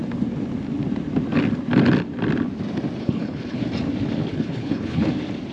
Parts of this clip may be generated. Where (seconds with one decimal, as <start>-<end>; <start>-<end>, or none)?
3.0-3.6; 4.3-5.1